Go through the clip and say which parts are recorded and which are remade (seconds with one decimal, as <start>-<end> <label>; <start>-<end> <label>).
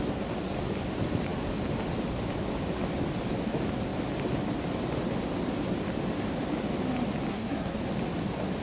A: 0.0-7.3 recorded; 7.3-7.8 remade; 7.8-8.6 recorded